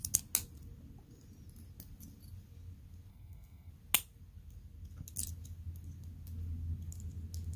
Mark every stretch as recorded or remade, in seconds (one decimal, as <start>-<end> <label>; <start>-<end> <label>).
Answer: 0.0-3.1 recorded; 3.1-3.7 remade; 3.7-7.6 recorded